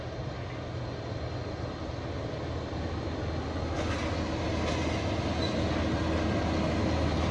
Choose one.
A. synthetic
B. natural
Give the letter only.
B